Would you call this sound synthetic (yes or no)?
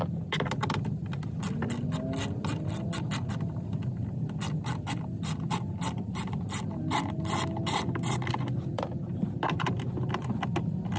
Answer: no